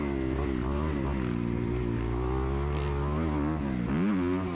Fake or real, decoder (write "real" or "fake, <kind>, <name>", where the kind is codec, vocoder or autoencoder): real